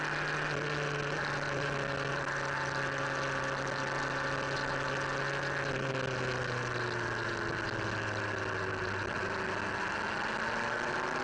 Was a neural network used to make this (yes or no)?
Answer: no